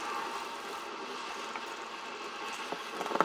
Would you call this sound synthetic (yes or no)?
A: no